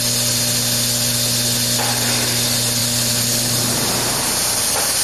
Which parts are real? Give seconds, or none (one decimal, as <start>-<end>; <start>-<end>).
0.0-5.0